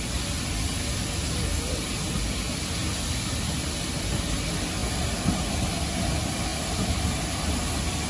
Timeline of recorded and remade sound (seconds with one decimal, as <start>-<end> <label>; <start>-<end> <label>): 0.0-8.1 recorded